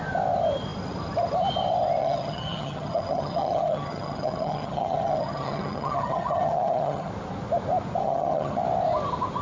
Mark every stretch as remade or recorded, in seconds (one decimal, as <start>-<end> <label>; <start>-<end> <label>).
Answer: 0.0-2.0 recorded; 2.0-7.1 remade; 7.1-8.0 recorded; 8.0-8.6 remade; 8.6-9.4 recorded